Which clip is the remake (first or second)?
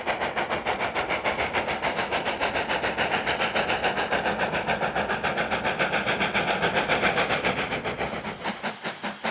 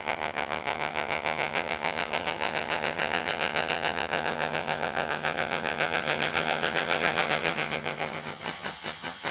second